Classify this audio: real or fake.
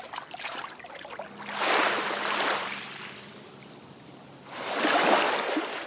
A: real